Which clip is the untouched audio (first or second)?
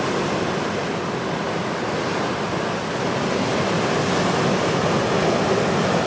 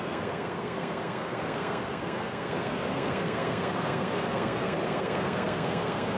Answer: first